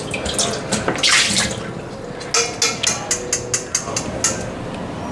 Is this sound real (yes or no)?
yes